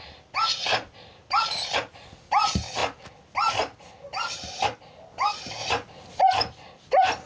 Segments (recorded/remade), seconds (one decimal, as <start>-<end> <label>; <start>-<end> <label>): 0.0-7.3 recorded